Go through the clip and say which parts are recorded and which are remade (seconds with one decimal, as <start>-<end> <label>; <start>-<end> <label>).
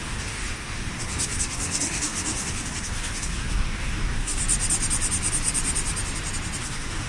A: 0.0-4.4 remade; 4.4-6.6 recorded; 6.6-7.1 remade